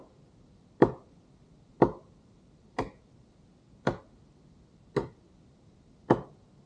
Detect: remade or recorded recorded